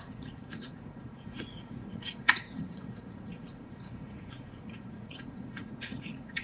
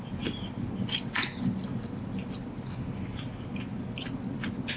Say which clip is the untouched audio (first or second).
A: second